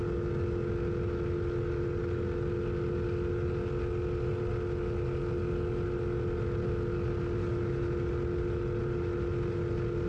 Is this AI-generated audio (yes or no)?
no